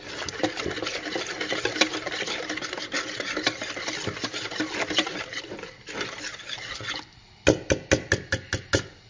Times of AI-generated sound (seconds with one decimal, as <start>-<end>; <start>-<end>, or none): none